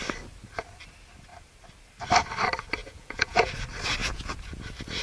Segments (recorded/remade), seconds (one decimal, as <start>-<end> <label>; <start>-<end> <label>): 0.0-2.8 recorded; 2.8-3.5 remade; 3.5-4.0 recorded; 4.0-4.6 remade; 4.6-5.0 recorded